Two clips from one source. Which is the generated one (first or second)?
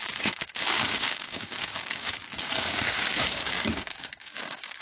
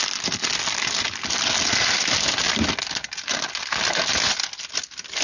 first